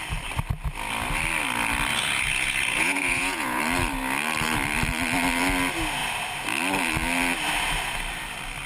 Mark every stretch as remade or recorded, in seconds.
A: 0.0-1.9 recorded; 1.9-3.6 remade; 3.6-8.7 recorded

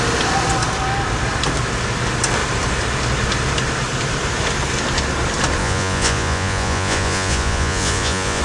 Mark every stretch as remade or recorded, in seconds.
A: 0.0-5.6 recorded; 5.6-8.4 remade

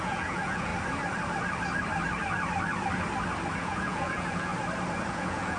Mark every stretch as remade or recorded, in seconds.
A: 0.0-0.7 remade; 0.7-3.6 recorded; 3.6-4.5 remade; 4.5-5.1 recorded; 5.1-5.6 remade

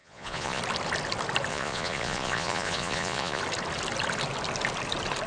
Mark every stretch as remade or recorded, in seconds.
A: 0.0-0.6 remade; 0.6-1.5 recorded; 1.5-3.4 remade; 3.4-5.3 recorded